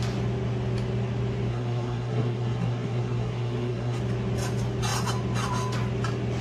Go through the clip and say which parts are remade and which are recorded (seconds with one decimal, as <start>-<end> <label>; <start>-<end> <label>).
0.0-1.5 recorded; 1.5-4.0 remade; 4.0-6.4 recorded